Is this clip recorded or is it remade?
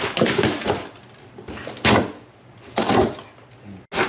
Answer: recorded